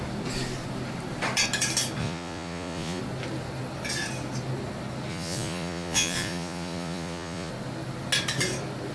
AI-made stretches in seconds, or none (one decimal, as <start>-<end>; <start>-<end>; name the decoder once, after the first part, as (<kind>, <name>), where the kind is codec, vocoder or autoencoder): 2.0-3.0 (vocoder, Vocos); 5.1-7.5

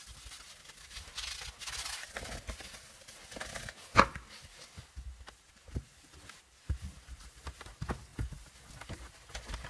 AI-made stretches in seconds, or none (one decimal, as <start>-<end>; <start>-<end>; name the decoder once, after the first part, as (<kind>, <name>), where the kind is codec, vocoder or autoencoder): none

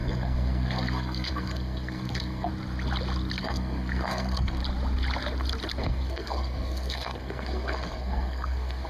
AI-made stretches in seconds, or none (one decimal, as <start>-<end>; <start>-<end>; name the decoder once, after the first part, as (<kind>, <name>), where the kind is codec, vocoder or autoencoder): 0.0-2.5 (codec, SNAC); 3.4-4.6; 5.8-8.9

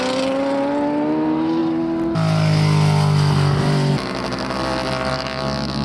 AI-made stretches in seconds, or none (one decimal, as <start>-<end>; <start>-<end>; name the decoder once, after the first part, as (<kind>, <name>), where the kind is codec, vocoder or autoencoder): none

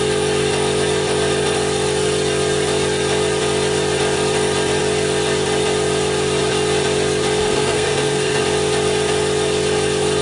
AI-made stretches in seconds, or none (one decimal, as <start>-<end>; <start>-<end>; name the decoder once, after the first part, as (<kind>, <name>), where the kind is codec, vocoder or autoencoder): 7.4-8.4 (codec, SNAC)

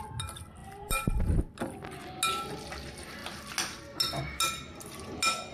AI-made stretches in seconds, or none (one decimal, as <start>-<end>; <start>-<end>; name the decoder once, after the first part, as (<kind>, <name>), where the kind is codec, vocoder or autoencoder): none